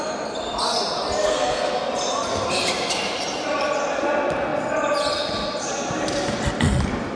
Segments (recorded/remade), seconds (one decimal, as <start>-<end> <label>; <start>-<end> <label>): 0.0-1.3 recorded; 1.3-1.9 remade; 1.9-7.2 recorded